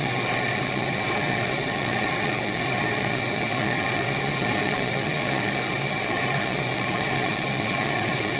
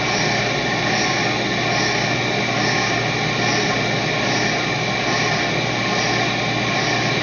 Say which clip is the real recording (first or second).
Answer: second